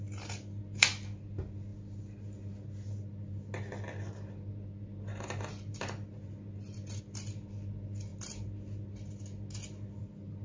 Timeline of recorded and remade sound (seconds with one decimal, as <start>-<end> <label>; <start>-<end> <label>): 0.0-10.4 recorded